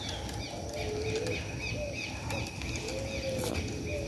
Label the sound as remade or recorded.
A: recorded